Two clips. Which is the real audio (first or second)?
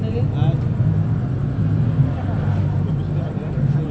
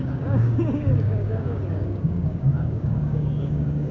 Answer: first